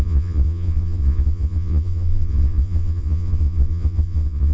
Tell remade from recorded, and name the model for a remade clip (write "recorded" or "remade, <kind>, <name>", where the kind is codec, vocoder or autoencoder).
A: remade, vocoder, Vocos